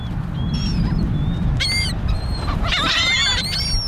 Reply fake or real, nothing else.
real